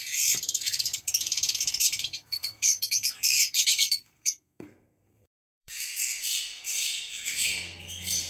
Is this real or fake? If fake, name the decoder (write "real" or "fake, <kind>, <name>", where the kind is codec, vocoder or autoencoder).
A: fake, codec, SNAC